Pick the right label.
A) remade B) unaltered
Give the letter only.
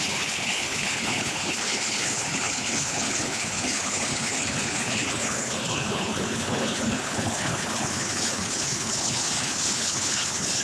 A